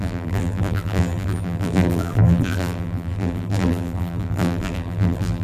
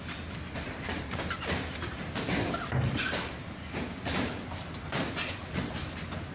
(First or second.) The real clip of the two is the second